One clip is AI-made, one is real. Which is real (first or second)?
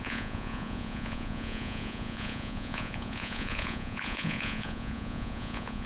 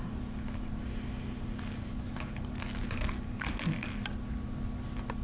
second